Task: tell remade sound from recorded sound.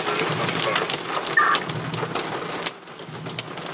recorded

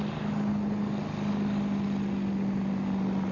recorded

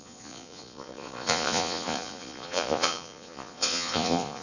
remade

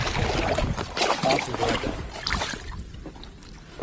recorded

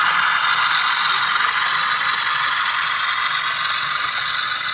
recorded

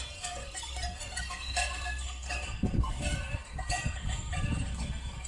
remade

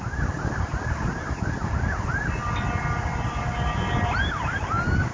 recorded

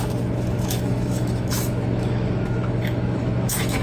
remade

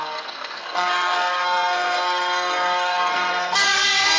remade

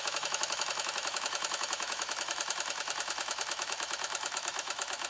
remade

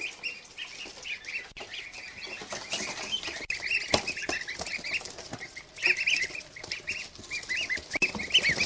recorded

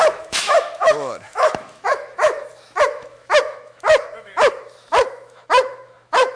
remade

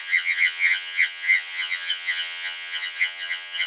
remade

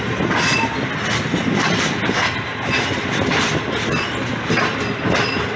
recorded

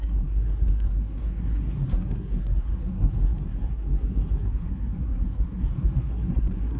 remade